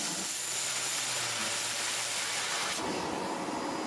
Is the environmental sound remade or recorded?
recorded